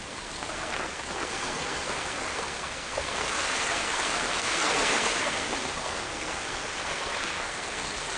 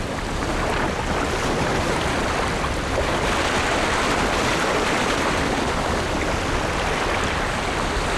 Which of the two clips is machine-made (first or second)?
first